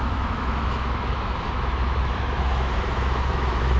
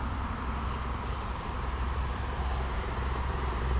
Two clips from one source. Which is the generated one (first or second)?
first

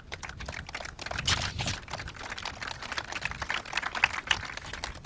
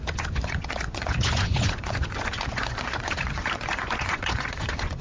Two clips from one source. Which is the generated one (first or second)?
second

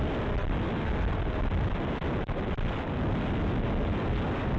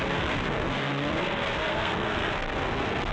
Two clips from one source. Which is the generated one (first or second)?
second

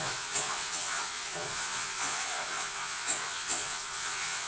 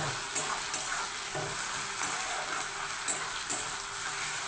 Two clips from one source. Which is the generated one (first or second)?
first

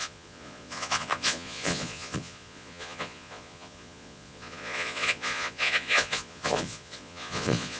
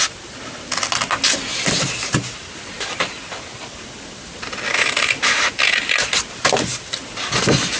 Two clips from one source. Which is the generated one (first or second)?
first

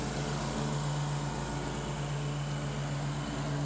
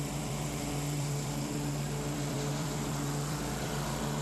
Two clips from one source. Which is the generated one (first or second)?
second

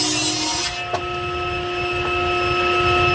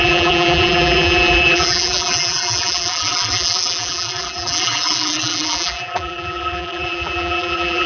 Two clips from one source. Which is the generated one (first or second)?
second